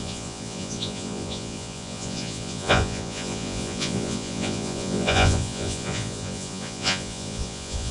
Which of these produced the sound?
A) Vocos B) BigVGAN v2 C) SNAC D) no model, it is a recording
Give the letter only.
A